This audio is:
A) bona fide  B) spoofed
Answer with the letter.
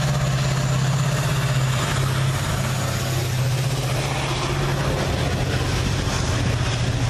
A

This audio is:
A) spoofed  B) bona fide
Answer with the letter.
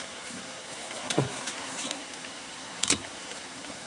A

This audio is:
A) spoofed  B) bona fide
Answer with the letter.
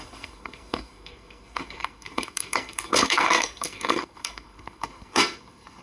A